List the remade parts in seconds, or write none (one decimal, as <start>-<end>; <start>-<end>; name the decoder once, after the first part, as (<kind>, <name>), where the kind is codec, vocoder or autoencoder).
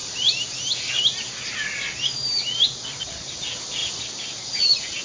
3.8-4.6 (vocoder, BigVGAN v2)